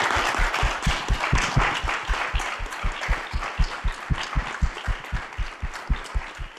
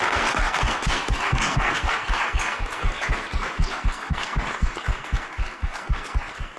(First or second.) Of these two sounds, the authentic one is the first